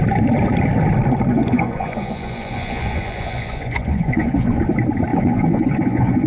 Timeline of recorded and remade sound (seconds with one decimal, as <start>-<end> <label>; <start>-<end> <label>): 0.0-1.3 recorded; 1.3-4.6 remade; 4.6-5.1 recorded; 5.1-6.3 remade